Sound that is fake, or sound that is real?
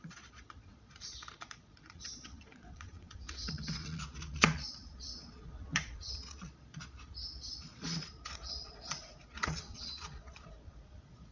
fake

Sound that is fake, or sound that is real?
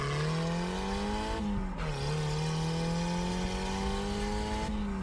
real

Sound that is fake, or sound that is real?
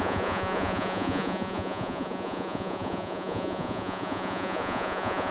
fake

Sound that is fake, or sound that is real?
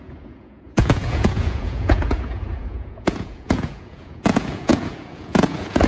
fake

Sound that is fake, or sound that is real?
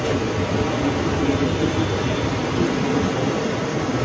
real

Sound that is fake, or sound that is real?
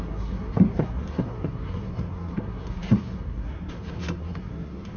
fake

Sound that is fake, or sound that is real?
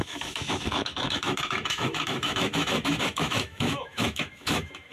fake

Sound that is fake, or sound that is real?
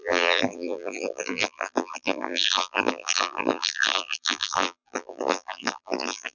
fake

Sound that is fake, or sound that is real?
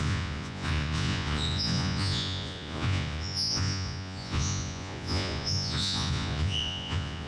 fake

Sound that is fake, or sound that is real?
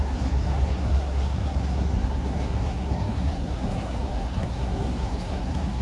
fake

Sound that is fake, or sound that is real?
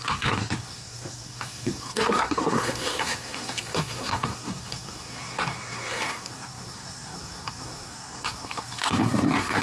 fake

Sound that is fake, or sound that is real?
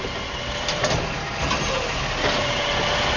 real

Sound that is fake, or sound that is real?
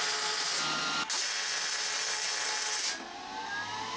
real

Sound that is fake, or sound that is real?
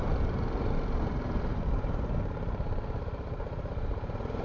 fake